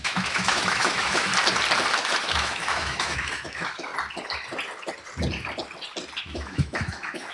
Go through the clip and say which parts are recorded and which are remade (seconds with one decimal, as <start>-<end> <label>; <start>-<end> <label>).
0.0-1.3 remade; 1.3-2.2 recorded; 2.2-3.9 remade; 3.9-6.2 recorded; 6.2-7.3 remade